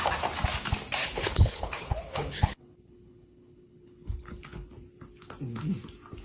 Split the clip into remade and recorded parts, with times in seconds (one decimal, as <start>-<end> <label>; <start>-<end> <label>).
0.0-1.0 recorded; 1.0-4.7 remade; 4.7-6.2 recorded